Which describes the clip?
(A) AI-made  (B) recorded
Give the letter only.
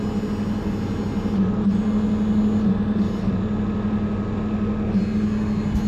B